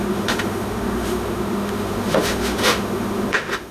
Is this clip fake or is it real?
fake